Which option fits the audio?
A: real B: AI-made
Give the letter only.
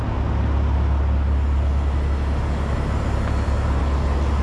A